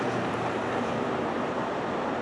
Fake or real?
fake